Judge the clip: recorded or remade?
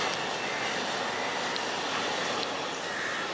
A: recorded